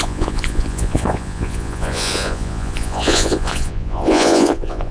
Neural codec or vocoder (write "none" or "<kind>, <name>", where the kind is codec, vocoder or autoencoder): vocoder, Vocos